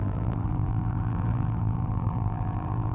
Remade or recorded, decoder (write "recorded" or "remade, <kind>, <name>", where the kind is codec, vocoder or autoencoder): remade, vocoder, BigVGAN v2